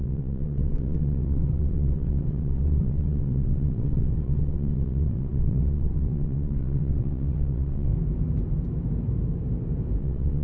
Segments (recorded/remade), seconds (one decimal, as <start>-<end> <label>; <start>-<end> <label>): 0.0-7.9 remade; 7.9-10.0 recorded; 10.0-10.4 remade